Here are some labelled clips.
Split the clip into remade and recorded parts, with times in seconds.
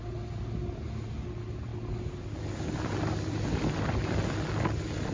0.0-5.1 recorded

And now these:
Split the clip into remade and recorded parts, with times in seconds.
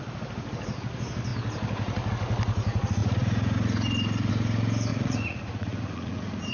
0.0-3.0 recorded; 3.0-4.3 remade; 4.3-4.9 recorded; 4.9-6.5 remade